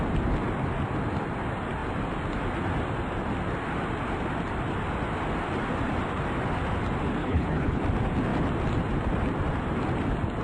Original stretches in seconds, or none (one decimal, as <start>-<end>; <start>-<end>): 0.0-7.2; 7.8-10.4